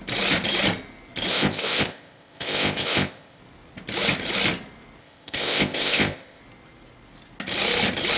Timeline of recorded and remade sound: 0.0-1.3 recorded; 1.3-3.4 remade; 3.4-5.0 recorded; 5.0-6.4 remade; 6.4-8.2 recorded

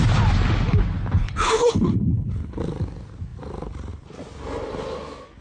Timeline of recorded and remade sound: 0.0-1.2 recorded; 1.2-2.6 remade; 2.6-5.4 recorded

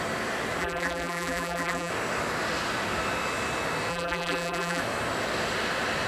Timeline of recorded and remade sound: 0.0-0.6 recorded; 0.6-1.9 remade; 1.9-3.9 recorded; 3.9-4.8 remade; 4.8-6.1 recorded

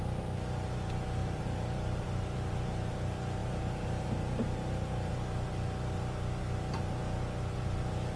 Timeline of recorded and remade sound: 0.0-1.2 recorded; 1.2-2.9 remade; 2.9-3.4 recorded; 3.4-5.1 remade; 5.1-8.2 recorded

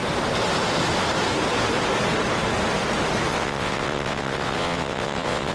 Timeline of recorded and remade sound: 0.0-3.3 recorded; 3.3-5.5 remade